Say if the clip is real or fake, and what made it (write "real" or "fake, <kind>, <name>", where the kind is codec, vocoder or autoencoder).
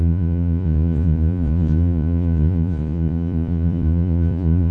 fake, vocoder, Vocos